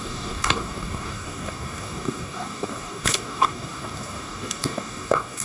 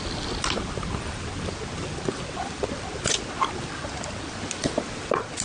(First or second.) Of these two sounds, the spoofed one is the first